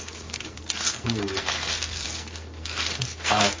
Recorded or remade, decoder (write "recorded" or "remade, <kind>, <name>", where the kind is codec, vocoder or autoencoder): remade, codec, SNAC